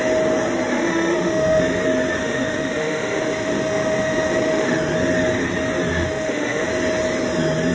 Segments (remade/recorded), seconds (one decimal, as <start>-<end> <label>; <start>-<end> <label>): 0.0-0.7 recorded; 0.7-1.6 remade; 1.6-2.2 recorded; 2.2-4.8 remade; 4.8-5.9 recorded; 5.9-6.7 remade; 6.7-7.7 recorded